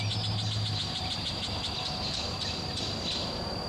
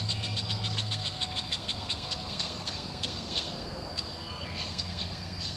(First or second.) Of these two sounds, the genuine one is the first